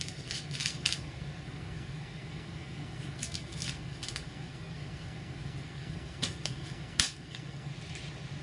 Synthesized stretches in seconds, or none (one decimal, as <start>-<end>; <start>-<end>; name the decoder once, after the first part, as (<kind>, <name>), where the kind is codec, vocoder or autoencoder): 0.0-7.7 (codec, SNAC)